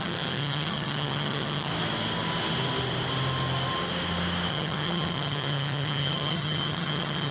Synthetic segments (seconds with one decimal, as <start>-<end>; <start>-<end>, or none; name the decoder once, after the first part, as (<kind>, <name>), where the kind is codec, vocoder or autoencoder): 0.0-1.7 (vocoder, HiFi-GAN); 4.5-7.3